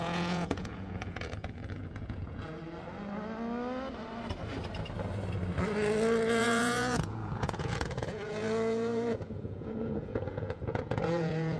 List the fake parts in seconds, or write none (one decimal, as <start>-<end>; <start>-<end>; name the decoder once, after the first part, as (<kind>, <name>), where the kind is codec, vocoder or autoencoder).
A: 0.0-2.6 (vocoder, Vocos); 6.4-11.6

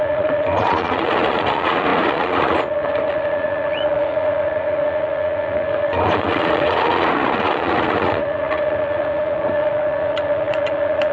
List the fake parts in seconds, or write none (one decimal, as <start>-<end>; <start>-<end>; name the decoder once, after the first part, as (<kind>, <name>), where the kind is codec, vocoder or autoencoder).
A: 0.0-11.1 (vocoder, Vocos)

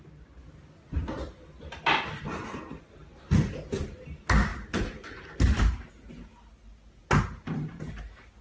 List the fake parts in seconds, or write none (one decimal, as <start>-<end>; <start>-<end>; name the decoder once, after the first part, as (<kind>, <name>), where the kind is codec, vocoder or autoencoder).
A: none

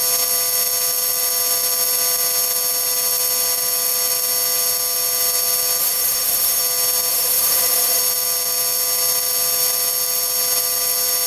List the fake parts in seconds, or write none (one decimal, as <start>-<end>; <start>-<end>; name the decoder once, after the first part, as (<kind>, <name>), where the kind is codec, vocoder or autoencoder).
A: 5.8-6.6 (autoencoder, DAC-VAE); 7.1-8.0

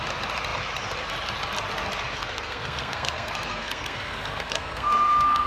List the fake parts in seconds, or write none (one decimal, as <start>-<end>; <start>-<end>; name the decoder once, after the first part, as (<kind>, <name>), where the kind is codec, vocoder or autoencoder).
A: 2.2-5.5 (codec, SNAC)

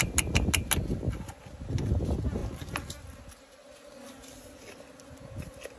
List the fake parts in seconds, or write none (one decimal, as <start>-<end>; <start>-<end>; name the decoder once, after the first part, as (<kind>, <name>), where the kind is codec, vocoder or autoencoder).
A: none